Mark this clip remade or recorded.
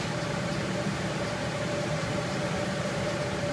remade